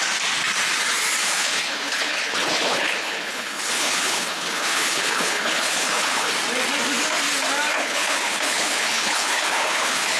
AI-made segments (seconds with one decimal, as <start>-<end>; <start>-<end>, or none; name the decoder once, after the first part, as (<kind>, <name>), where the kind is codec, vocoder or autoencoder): 1.2-6.3 (codec, HILCodec); 7.7-10.2